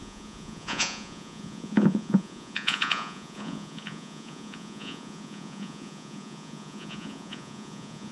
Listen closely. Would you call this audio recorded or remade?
remade